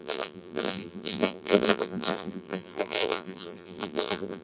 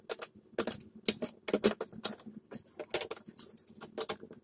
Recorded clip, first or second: second